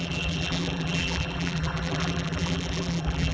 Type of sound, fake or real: fake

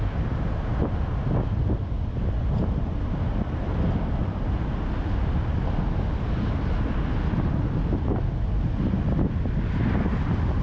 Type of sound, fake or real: real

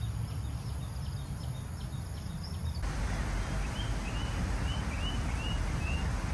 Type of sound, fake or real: real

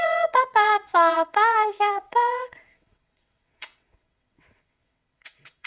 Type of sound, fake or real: fake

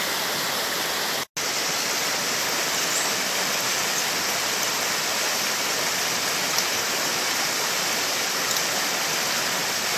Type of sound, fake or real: real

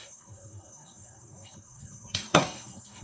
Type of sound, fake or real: fake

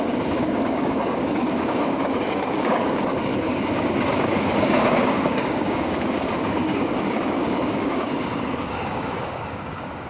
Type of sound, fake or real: fake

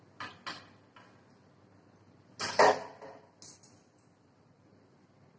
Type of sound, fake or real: real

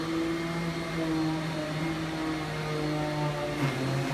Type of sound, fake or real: real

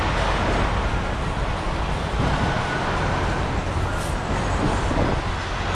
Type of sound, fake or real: real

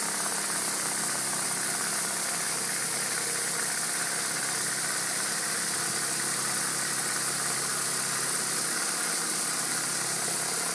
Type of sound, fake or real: real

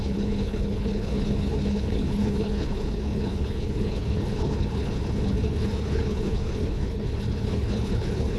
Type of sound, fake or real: fake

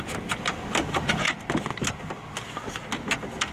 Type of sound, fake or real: real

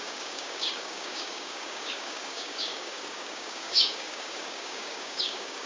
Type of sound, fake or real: fake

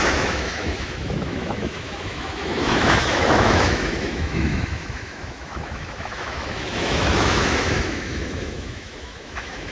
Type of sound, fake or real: fake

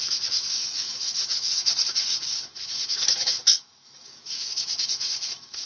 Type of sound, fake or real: fake